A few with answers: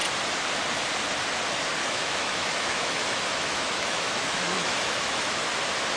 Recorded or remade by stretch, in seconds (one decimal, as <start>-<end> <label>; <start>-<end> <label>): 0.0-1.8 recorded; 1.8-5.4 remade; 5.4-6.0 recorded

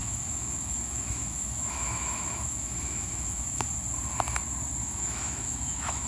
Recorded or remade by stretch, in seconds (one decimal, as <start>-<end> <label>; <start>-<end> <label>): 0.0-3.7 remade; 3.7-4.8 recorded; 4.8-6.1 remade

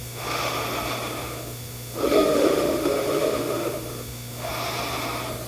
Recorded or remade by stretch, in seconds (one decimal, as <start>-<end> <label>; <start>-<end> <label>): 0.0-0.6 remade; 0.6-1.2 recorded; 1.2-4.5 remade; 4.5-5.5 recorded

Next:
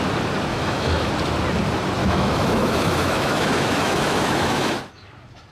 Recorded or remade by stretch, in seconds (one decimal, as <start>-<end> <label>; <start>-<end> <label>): 0.0-0.5 recorded; 0.5-1.1 remade; 1.1-2.0 recorded; 2.0-4.8 remade; 4.8-5.5 recorded